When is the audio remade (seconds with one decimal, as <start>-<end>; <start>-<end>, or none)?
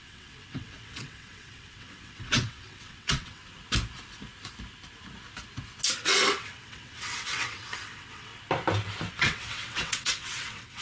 0.0-3.4; 6.0-8.3; 9.1-10.8